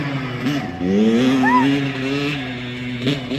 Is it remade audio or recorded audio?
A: recorded